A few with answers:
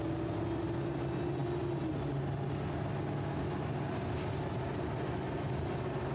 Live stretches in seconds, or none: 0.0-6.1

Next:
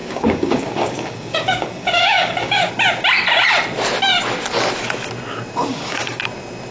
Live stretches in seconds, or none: 2.7-5.7; 6.2-6.7

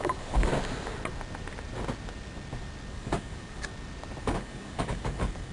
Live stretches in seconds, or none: 0.5-2.9; 3.7-4.2

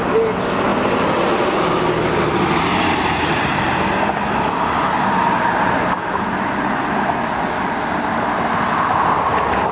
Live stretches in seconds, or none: 0.0-9.7

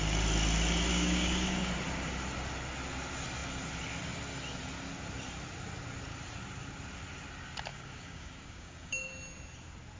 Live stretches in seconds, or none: 0.0-0.9; 1.7-7.7; 9.1-10.0

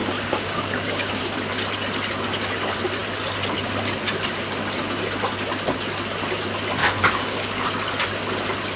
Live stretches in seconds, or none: 1.2-6.8; 7.7-8.8